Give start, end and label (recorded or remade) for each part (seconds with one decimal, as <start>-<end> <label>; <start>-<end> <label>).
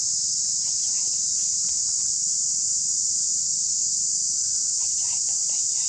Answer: 0.0-3.3 recorded; 3.3-3.9 remade; 3.9-5.9 recorded